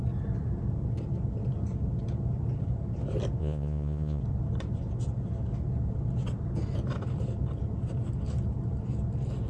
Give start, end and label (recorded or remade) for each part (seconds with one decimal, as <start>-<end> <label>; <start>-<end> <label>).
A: 0.0-3.4 recorded; 3.4-4.2 remade; 4.2-9.5 recorded